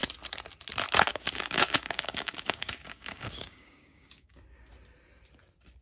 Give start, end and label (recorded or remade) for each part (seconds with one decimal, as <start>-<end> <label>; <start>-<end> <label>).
0.0-1.1 recorded; 1.1-4.4 remade; 4.4-5.8 recorded